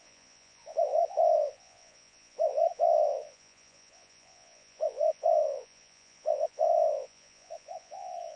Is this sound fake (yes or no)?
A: yes